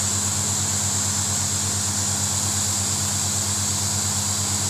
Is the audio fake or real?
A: real